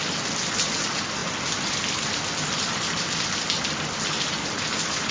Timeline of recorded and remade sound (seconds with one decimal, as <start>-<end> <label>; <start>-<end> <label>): 0.0-5.1 recorded